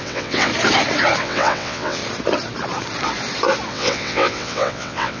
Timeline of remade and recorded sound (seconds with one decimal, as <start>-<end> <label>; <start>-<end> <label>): 0.0-0.5 remade; 0.5-1.2 recorded; 1.2-2.0 remade; 2.0-3.7 recorded; 3.7-5.2 remade